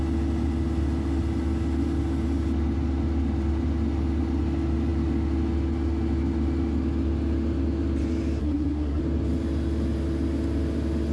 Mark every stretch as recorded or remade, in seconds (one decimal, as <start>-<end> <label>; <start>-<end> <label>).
0.0-8.4 recorded; 8.4-9.0 remade; 9.0-11.1 recorded

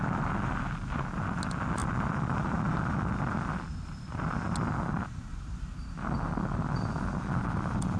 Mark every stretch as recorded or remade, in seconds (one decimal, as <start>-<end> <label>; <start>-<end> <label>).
0.0-8.0 recorded

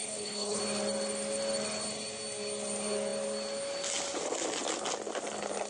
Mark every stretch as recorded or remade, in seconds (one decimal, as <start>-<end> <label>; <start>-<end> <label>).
0.0-0.6 remade; 0.6-5.7 recorded

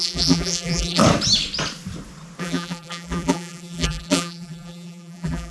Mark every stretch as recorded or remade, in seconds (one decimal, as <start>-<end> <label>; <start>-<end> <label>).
0.0-1.0 remade; 1.0-2.4 recorded; 2.4-5.5 remade

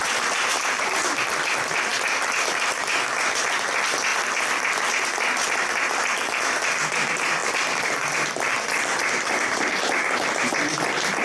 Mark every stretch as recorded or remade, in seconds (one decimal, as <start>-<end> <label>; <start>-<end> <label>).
0.0-1.0 remade; 1.0-11.2 recorded

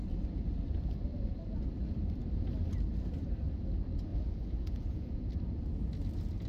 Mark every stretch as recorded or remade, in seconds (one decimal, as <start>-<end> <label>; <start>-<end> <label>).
0.0-4.1 recorded; 4.1-5.3 remade; 5.3-6.5 recorded

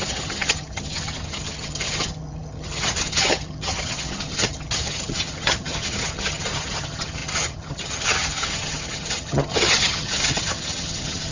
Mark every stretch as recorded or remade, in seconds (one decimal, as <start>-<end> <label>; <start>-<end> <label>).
0.0-11.3 remade

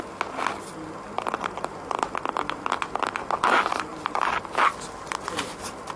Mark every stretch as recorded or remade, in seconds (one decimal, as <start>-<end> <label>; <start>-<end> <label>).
0.0-6.0 recorded